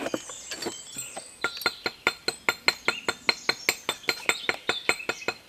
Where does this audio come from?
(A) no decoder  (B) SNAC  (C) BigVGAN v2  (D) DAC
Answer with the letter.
A